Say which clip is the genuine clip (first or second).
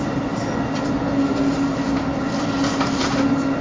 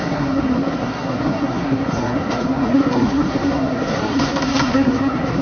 first